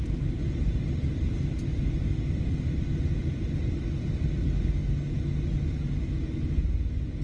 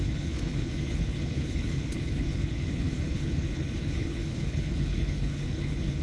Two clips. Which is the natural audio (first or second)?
first